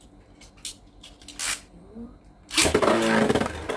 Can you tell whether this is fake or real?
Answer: real